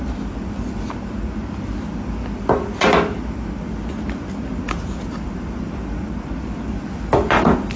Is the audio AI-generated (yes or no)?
no